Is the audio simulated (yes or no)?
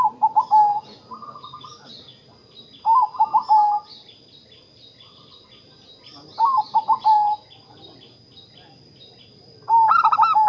no